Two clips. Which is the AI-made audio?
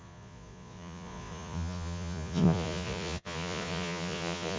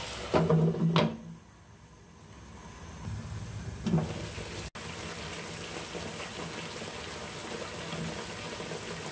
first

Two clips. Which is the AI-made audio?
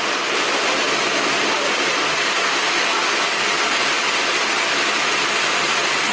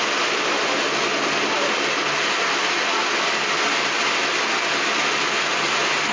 first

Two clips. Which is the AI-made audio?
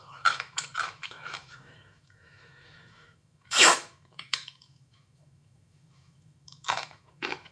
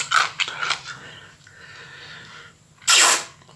first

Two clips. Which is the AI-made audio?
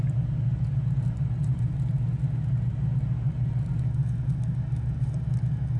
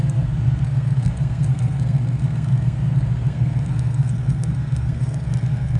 second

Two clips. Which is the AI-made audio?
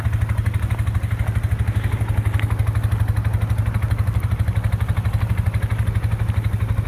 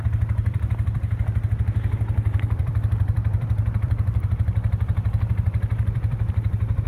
second